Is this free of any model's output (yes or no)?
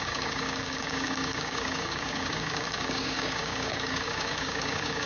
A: no